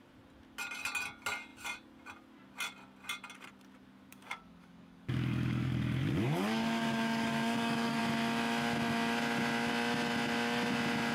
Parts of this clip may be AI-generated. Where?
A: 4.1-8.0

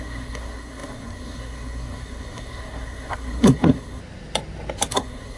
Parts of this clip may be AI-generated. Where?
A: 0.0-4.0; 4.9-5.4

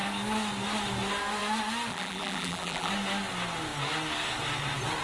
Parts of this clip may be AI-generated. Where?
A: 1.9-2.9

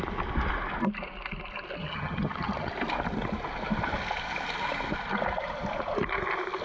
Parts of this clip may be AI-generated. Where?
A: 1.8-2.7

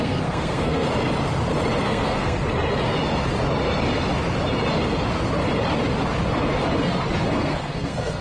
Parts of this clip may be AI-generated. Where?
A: 0.0-0.9; 1.9-2.4; 7.3-8.2